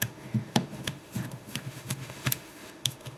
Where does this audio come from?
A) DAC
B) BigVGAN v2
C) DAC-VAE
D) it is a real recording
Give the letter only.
C